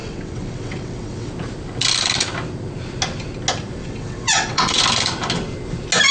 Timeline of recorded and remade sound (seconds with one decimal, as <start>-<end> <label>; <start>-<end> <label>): 0.0-1.3 remade; 1.3-3.8 recorded; 3.8-4.8 remade; 4.8-6.1 recorded